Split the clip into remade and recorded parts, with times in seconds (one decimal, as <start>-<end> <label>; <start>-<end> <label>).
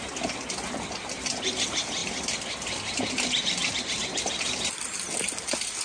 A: 0.0-5.8 recorded